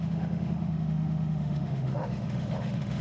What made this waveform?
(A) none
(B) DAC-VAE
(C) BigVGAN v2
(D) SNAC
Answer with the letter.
B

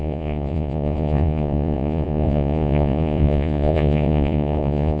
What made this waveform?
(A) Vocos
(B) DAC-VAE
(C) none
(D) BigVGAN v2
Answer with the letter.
A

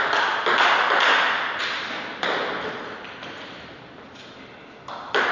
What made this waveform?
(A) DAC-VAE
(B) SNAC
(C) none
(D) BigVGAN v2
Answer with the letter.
C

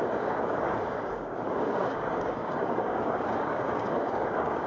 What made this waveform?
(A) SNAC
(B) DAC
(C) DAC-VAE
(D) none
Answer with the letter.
B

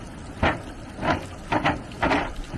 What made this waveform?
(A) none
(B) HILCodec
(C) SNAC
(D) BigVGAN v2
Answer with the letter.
A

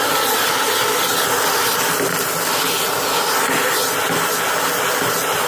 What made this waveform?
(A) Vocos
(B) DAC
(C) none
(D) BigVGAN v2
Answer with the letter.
C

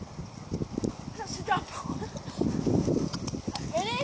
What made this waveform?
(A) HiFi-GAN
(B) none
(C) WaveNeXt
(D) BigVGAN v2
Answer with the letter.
B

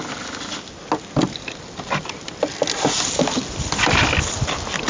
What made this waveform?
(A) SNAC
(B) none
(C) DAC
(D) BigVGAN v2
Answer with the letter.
B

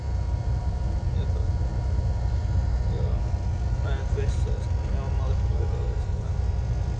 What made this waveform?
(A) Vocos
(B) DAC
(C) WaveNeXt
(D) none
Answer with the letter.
D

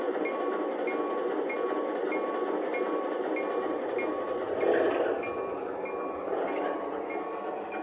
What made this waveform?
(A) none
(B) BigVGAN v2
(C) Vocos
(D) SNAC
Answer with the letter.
A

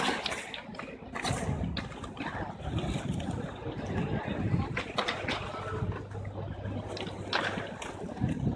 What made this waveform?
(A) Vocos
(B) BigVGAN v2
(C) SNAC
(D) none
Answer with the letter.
D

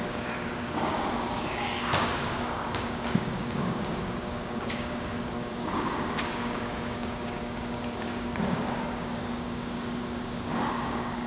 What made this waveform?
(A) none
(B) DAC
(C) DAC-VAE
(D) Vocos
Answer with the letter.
B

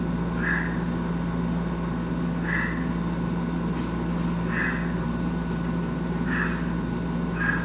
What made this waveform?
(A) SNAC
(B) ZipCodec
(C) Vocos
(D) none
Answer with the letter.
D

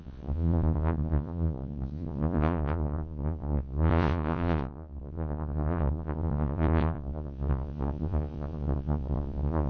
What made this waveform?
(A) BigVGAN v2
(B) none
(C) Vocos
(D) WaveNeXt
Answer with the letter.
C